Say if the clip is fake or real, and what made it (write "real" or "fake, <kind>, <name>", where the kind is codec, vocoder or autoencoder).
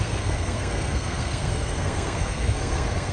fake, codec, SNAC